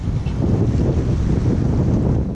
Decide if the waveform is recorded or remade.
recorded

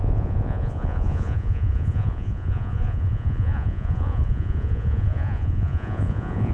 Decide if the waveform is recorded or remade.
remade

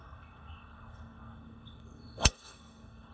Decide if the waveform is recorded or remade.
remade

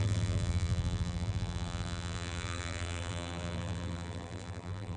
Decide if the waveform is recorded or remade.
remade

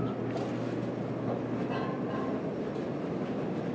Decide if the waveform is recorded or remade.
recorded